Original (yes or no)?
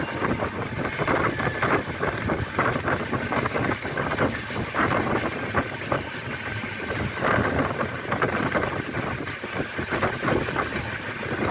yes